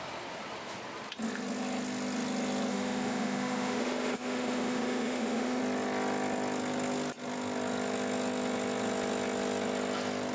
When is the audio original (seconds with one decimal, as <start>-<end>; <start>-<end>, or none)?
0.0-2.7; 5.6-10.3